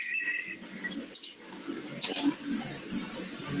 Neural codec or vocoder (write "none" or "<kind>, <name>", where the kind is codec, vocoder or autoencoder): none